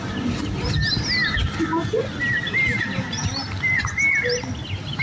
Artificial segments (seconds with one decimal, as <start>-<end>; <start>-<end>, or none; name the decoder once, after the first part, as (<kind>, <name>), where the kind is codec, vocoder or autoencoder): none